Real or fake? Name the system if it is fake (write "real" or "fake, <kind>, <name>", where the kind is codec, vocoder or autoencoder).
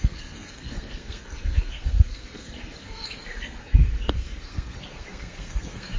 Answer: fake, codec, SNAC